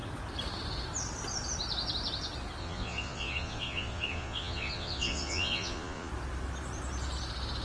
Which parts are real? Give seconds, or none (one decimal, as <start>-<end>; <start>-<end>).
0.0-2.6; 6.1-7.6